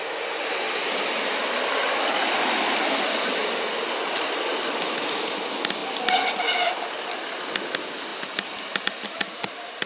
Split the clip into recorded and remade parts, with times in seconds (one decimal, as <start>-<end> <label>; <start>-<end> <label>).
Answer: 0.0-3.4 recorded; 3.4-4.5 remade; 4.5-9.9 recorded